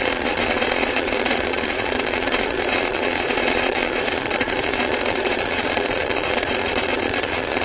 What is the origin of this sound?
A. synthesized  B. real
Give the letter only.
A